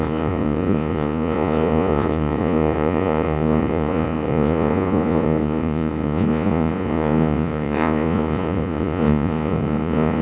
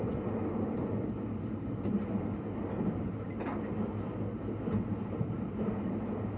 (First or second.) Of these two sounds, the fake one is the first